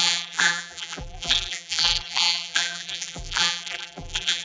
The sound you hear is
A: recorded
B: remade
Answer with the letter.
B